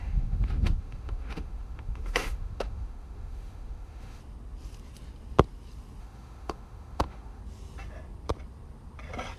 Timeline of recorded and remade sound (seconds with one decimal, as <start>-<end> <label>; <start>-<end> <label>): 0.0-4.2 remade; 4.2-6.0 recorded; 6.0-7.4 remade; 7.4-9.4 recorded

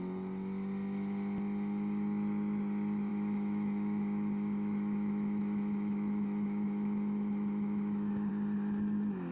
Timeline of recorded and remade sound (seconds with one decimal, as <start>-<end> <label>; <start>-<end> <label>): 0.0-3.1 recorded; 3.1-8.3 remade; 8.3-9.3 recorded

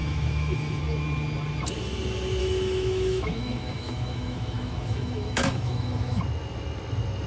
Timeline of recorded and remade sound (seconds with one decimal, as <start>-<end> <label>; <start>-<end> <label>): 0.0-0.8 remade; 0.8-2.4 recorded; 2.4-6.2 remade; 6.2-7.3 recorded

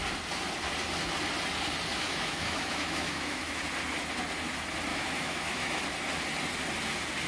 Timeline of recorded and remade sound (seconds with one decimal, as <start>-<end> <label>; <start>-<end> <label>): 0.0-1.9 recorded; 1.9-3.6 remade; 3.6-4.9 recorded; 4.9-5.8 remade; 5.8-7.3 recorded

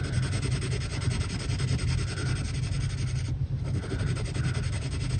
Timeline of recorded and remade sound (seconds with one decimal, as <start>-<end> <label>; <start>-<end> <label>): 0.0-5.2 recorded

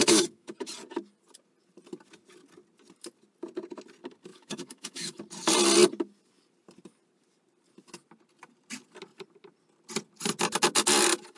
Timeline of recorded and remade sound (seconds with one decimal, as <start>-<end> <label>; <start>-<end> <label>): 0.0-0.7 remade; 0.7-4.3 recorded; 4.3-5.2 remade; 5.2-11.4 recorded

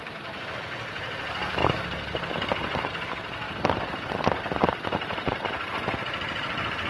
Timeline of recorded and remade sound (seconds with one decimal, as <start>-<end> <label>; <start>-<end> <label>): 0.0-6.9 recorded